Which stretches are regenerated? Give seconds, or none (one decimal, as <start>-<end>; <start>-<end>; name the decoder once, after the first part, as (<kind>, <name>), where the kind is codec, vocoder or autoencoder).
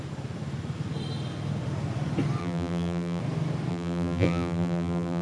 2.4-3.2 (vocoder, BigVGAN v2); 3.7-5.2